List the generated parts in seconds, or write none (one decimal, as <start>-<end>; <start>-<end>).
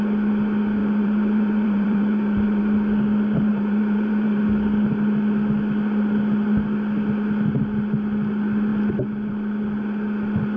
0.8-2.6; 3.5-4.4